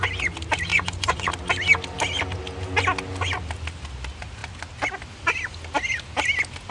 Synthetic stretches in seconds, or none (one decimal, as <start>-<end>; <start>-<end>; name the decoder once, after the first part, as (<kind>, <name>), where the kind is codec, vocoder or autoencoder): 0.7-1.3 (vocoder, Vocos)